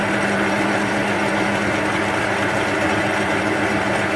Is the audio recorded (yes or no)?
yes